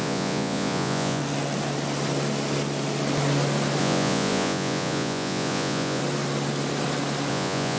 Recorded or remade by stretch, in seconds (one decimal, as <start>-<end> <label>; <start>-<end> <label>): 0.0-1.2 remade; 1.2-3.8 recorded; 3.8-6.0 remade; 6.0-7.3 recorded; 7.3-7.8 remade